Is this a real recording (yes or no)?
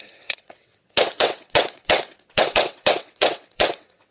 no